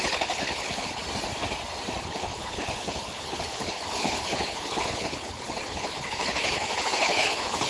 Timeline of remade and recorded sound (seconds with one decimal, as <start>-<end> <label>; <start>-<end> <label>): 0.0-1.0 remade; 1.0-2.0 recorded; 2.0-7.7 remade